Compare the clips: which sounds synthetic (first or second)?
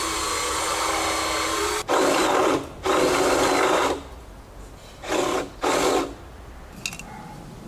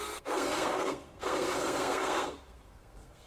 second